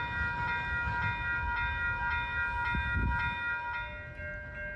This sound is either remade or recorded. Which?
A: recorded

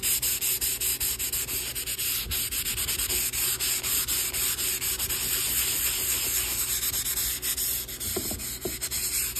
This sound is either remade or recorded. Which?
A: recorded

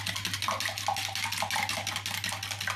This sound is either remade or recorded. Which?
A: recorded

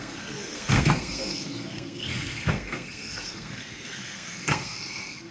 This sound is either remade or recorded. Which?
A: remade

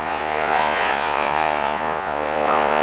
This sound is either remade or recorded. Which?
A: remade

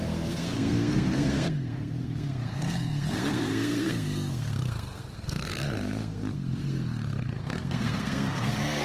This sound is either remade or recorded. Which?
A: remade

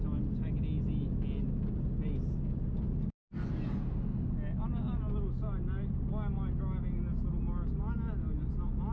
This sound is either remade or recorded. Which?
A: recorded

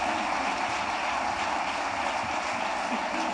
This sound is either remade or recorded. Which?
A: recorded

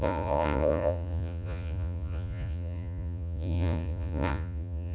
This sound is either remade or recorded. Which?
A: remade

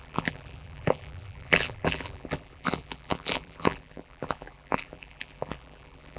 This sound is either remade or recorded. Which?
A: remade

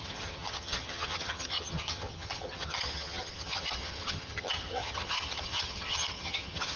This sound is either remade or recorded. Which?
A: remade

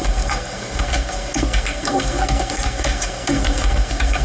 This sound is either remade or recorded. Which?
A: remade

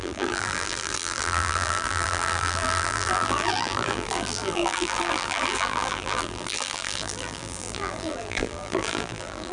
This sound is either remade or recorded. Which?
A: remade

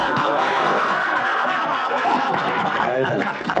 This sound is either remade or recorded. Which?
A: remade